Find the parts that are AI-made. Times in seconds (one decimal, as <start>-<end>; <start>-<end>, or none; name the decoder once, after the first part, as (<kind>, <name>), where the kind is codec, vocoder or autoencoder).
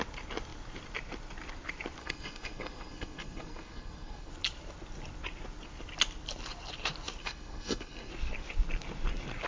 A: 2.0-4.3 (codec, SNAC); 7.2-8.1